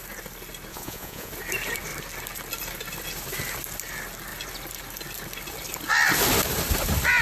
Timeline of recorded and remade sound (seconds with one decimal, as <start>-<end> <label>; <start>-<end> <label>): 0.0-0.7 recorded; 0.7-1.3 remade; 1.3-7.2 recorded